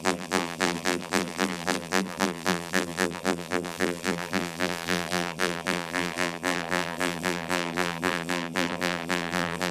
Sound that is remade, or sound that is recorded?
remade